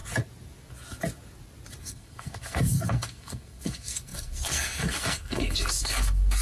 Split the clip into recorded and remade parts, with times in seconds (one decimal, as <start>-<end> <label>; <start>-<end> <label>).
0.0-1.8 recorded; 1.8-6.4 remade